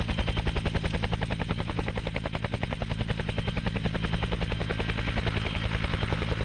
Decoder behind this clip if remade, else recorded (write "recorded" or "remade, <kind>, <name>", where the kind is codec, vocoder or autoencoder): recorded